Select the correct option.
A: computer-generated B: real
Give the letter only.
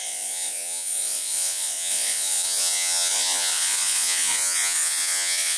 A